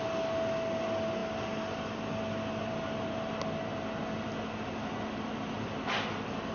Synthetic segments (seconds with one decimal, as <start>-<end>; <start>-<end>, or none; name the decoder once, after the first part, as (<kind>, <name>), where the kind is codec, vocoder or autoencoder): none